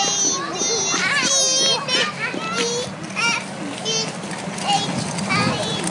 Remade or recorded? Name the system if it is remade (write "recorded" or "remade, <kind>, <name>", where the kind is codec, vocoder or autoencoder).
recorded